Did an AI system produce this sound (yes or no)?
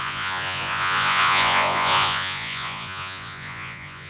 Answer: yes